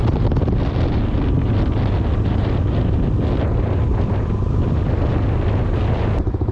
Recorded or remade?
recorded